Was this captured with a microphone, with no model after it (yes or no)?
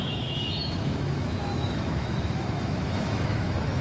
no